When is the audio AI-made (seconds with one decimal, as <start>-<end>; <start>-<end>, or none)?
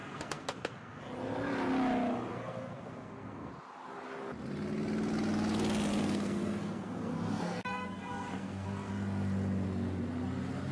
0.0-1.0; 2.3-3.5; 5.9-8.9